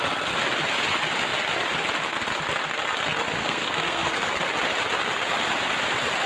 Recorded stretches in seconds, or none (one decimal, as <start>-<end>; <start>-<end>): 0.0-3.4; 4.3-6.3